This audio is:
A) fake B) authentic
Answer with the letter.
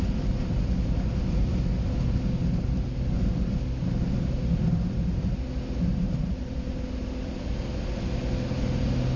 B